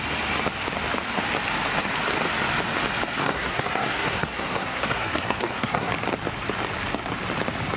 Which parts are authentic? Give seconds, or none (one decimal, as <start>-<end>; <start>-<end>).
0.0-3.2; 5.9-7.8